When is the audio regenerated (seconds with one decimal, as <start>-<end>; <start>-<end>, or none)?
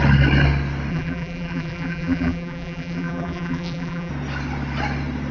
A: 0.9-4.1